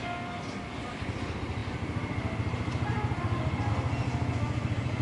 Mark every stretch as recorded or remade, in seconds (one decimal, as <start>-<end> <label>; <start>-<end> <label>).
0.0-1.6 recorded; 1.6-3.7 remade; 3.7-5.0 recorded